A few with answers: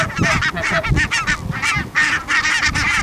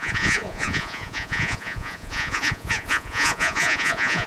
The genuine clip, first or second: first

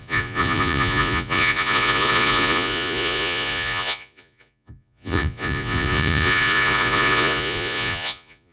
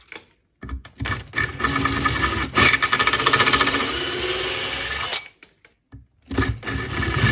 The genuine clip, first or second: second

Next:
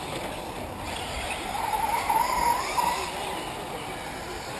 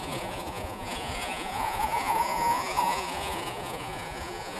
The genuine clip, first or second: first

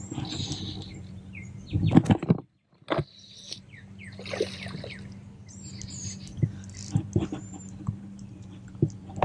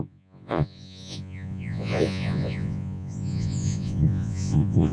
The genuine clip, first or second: first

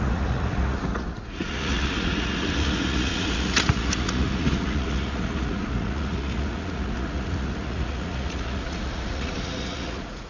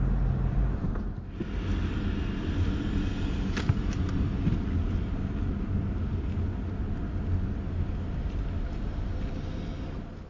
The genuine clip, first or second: second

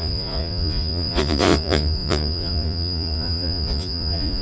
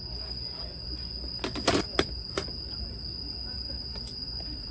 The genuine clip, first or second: second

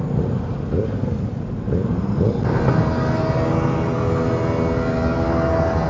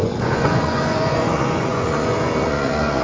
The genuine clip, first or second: first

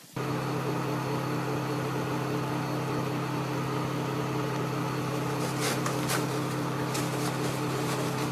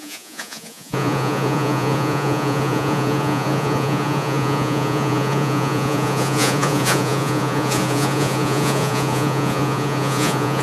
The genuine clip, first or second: first